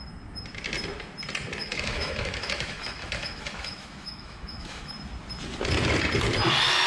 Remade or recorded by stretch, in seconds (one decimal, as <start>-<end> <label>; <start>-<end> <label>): 0.0-1.6 recorded; 1.6-4.9 remade; 4.9-6.9 recorded